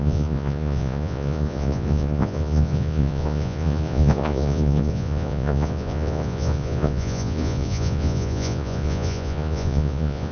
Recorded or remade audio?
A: remade